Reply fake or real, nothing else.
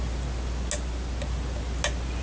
real